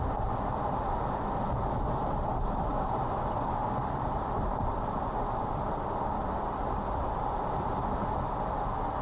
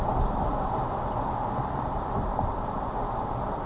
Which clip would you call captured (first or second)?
second